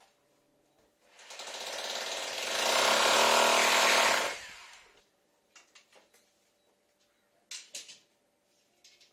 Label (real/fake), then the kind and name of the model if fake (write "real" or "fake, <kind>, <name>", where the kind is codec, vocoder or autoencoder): real